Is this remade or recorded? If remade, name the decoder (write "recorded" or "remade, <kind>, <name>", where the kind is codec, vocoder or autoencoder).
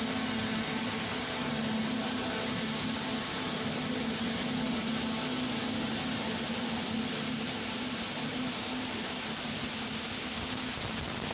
recorded